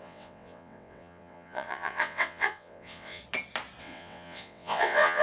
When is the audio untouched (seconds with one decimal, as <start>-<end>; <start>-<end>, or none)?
3.2-3.8